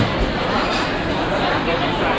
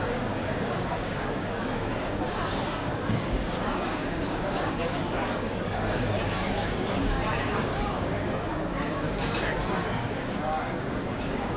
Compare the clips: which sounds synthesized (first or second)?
second